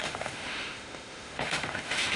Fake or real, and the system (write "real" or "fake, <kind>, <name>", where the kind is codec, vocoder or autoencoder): fake, autoencoder, DAC-VAE